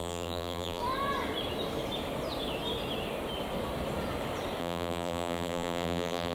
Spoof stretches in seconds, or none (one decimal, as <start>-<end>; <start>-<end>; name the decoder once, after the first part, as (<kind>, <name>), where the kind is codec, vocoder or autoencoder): 0.0-0.8 (vocoder, BigVGAN v2); 4.6-6.3